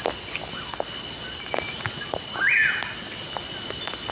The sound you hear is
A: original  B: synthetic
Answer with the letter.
A